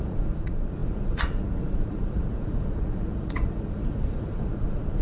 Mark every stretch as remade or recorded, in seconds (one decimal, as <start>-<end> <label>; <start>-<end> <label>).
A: 0.0-5.0 remade